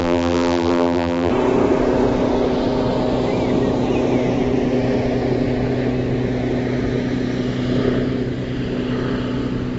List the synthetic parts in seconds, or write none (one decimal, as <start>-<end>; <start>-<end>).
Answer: 0.0-1.3